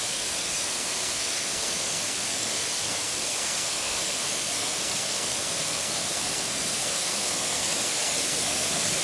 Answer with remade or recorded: remade